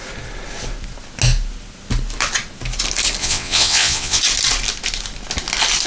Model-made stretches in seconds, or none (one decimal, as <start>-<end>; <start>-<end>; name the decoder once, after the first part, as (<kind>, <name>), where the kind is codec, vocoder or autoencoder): 3.2-4.2 (vocoder, WaveNeXt)

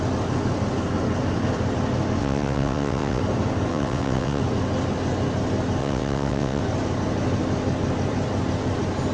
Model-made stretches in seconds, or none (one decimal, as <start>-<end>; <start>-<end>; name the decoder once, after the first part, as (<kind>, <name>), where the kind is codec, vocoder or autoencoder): 2.2-3.2 (vocoder, WaveNeXt); 3.7-4.4; 5.8-6.6

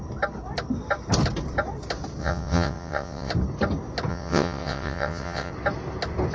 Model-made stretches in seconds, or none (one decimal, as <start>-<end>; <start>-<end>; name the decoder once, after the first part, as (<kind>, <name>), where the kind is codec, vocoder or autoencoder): 2.2-3.3 (vocoder, WaveNeXt); 4.1-5.5

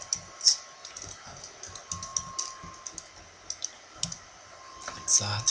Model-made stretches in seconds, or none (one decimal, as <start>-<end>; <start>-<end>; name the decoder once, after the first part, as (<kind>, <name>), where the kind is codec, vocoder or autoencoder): none

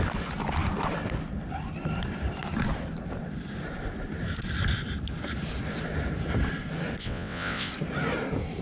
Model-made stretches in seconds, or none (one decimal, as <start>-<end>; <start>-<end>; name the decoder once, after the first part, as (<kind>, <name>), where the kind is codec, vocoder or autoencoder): 7.0-7.7 (vocoder, WaveNeXt)

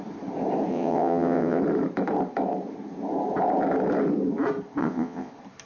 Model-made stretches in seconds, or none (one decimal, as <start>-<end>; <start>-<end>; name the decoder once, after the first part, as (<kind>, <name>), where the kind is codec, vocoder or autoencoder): 0.7-1.6 (vocoder, WaveNeXt); 4.8-5.3

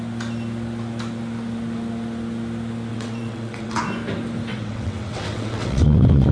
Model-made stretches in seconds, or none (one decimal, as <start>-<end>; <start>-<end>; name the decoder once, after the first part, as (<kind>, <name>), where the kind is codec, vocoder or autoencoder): 2.9-3.8 (vocoder, WaveNeXt); 4.5-6.3

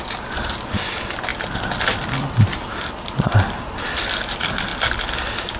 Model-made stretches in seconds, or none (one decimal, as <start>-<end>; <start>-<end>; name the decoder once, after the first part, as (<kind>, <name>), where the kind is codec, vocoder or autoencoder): none